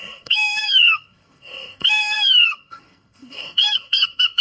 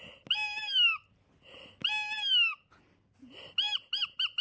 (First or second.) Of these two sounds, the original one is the second